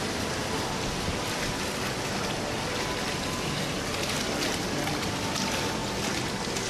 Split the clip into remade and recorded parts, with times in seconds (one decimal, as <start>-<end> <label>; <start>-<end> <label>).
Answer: 0.0-6.7 recorded